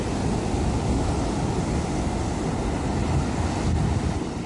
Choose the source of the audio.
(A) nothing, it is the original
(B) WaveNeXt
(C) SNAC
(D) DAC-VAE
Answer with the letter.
A